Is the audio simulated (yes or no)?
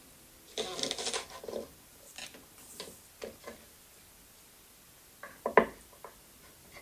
no